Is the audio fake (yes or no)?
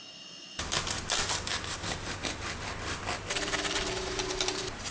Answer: no